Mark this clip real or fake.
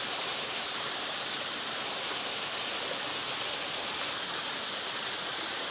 real